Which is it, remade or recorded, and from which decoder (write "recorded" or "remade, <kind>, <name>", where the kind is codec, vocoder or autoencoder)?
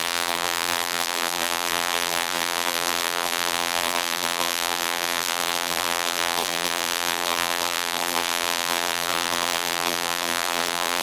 remade, vocoder, BigVGAN v2